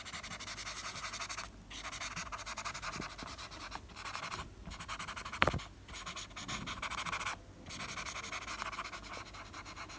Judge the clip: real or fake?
real